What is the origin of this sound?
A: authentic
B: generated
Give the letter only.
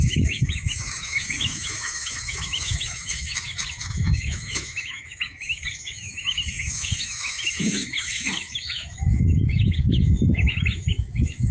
B